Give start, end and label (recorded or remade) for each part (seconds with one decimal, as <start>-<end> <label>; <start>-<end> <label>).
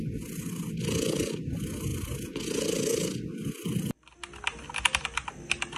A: 0.0-5.8 recorded